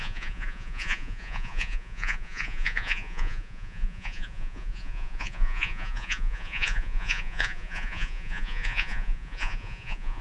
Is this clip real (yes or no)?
no